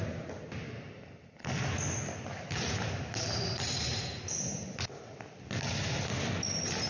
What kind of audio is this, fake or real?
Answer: real